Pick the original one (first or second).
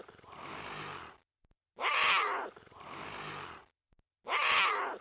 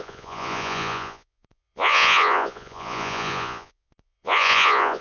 first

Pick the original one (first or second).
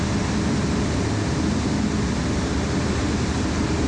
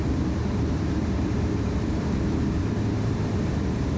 first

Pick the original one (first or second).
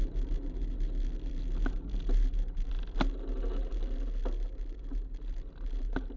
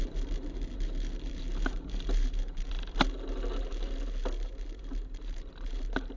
first